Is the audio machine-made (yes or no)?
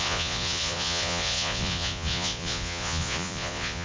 yes